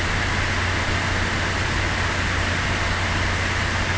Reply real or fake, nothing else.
real